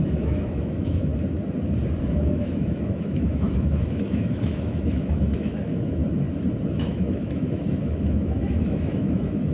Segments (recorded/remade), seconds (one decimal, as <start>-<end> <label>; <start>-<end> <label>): 0.0-1.1 remade; 1.1-2.0 recorded; 2.0-6.0 remade; 6.0-6.7 recorded; 6.7-9.5 remade